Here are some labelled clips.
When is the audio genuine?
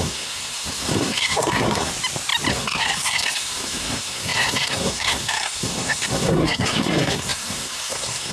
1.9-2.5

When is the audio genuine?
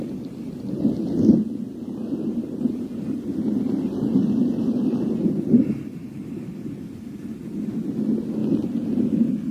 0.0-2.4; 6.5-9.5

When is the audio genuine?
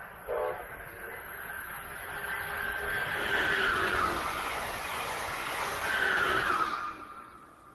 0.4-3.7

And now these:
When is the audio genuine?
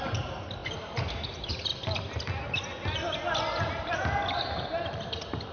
0.0-5.5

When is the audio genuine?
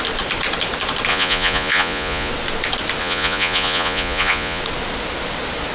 0.0-1.1; 2.3-3.0; 4.6-5.7